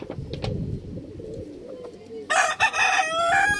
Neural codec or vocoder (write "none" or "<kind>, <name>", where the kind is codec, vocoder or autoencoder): none